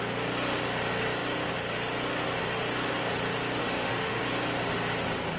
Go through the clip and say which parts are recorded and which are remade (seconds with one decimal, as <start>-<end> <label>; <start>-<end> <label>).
0.0-3.6 recorded; 3.6-4.2 remade; 4.2-5.4 recorded